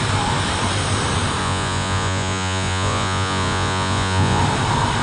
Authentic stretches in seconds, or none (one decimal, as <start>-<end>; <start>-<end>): 0.0-1.4; 4.4-5.0

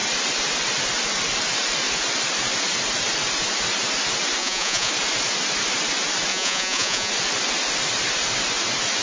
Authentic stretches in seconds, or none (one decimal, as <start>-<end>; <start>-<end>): 0.0-4.4; 4.9-6.3; 7.1-9.0

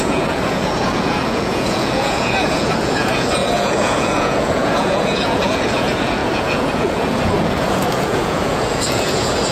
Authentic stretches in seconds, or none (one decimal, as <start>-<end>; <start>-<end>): none

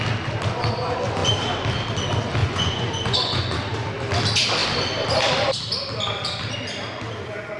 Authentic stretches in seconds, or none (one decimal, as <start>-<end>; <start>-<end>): 0.0-2.4; 3.5-7.6